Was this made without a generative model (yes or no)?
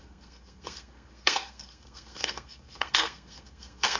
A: no